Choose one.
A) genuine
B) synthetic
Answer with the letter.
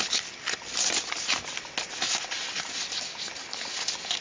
A